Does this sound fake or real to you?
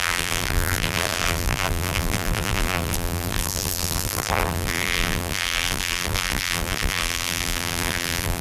fake